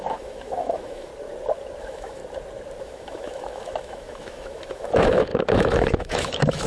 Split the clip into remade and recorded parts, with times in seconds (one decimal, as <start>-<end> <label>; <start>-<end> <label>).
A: 0.0-1.1 remade; 1.1-1.8 recorded; 1.8-2.2 remade; 2.2-2.8 recorded; 2.8-6.7 remade